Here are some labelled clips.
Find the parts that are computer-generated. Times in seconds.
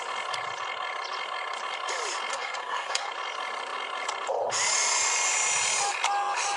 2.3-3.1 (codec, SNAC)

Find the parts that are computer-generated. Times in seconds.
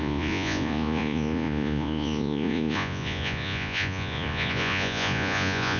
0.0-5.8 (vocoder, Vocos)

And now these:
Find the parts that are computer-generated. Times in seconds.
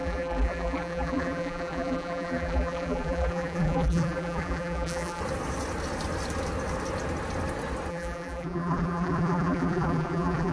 0.0-5.2 (vocoder, BigVGAN v2); 7.9-10.5